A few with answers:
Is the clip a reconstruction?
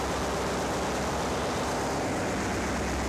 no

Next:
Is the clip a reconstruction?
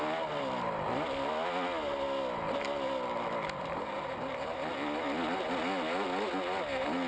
no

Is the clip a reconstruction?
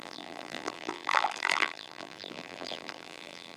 yes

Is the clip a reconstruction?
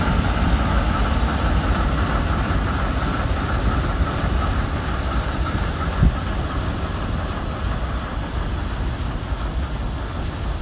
yes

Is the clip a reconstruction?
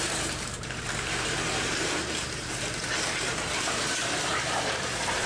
yes